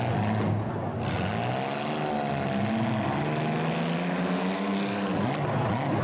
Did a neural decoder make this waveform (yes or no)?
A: no